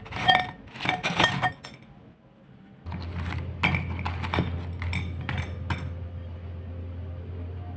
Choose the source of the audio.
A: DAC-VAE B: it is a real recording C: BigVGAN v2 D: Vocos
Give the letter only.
B